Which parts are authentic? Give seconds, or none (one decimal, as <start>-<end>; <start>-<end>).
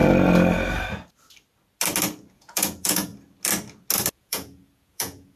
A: 0.0-2.3; 3.1-4.1